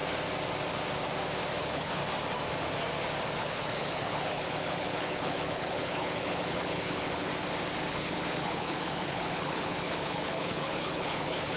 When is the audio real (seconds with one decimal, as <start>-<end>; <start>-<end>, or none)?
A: 0.0-1.6; 2.0-3.4; 7.3-7.9